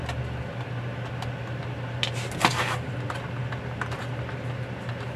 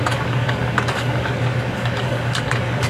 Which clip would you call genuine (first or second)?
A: first